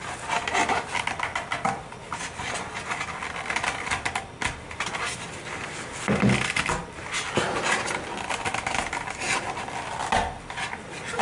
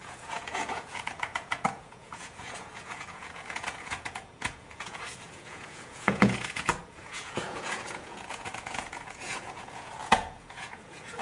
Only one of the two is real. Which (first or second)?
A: first